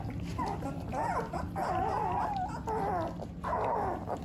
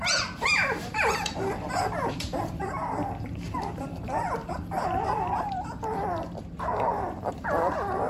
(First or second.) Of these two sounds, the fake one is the second